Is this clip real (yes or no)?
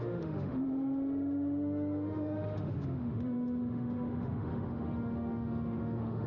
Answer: no